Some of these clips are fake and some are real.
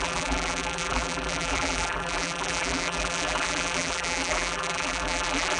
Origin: fake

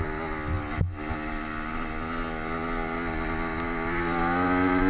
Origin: real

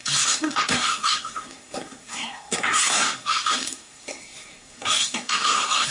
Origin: fake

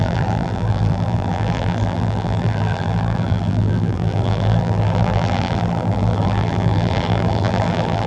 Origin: fake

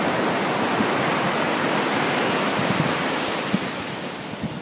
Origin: real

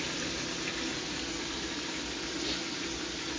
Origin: real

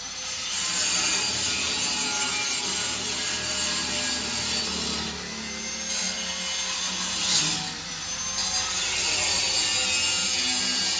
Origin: real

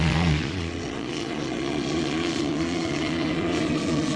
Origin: fake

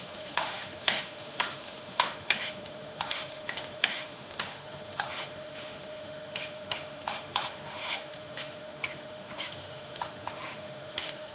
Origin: fake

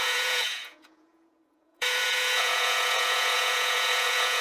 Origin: fake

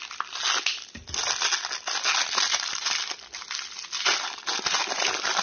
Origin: real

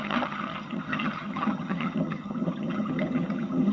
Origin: fake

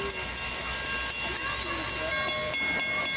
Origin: real